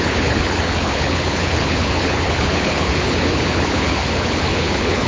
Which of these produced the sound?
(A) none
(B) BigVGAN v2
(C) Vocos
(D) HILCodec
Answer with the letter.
D